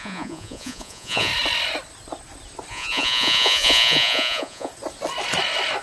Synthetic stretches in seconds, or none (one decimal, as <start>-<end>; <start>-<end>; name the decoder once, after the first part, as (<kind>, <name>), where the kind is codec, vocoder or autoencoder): 0.0-1.3 (vocoder, Vocos); 2.7-4.7